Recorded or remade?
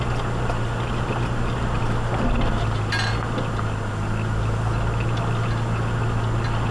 recorded